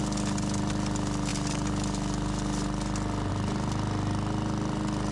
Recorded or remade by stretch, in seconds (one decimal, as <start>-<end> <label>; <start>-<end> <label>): 0.0-5.1 recorded